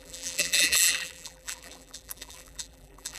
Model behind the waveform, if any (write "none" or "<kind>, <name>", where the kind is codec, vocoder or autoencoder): vocoder, BigVGAN v2